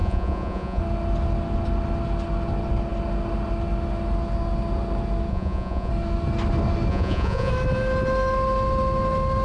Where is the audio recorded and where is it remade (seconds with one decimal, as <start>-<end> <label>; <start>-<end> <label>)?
0.0-0.8 remade; 0.8-5.3 recorded; 5.3-5.9 remade; 5.9-6.9 recorded; 6.9-7.5 remade; 7.5-9.4 recorded